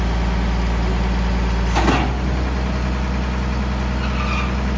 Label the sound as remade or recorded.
recorded